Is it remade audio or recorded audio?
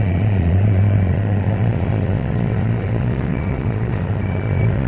remade